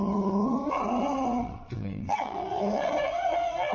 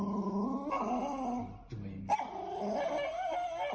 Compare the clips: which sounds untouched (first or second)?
second